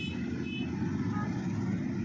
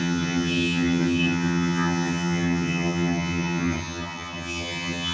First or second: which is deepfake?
second